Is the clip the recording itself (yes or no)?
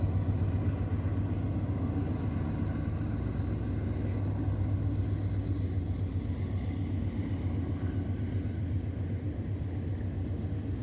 yes